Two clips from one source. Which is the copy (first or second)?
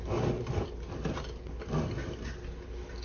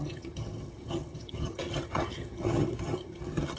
second